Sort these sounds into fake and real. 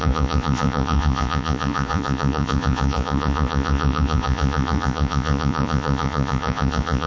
fake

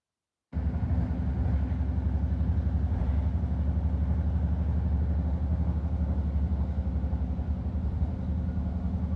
real